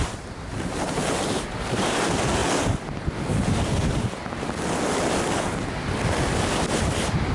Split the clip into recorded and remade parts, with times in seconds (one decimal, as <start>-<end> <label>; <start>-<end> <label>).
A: 0.0-1.0 remade; 1.0-1.6 recorded; 1.6-2.4 remade; 2.4-6.8 recorded; 6.8-7.3 remade